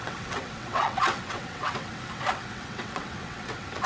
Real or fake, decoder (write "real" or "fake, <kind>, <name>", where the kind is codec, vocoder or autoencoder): fake, vocoder, WaveNeXt